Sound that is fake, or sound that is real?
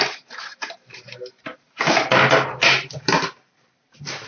real